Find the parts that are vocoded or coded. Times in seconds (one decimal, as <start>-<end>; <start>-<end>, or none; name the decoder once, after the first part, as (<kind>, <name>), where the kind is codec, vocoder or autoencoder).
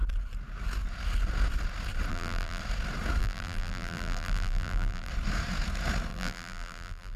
2.1-2.6 (vocoder, BigVGAN v2); 3.2-5.1; 6.1-7.2